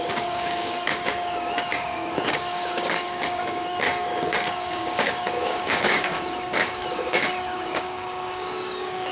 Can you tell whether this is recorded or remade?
remade